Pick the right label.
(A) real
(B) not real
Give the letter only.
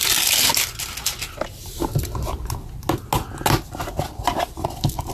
A